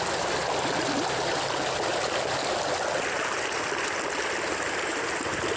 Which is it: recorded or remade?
recorded